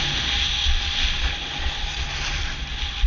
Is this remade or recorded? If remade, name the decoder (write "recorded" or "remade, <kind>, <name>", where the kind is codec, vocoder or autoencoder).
recorded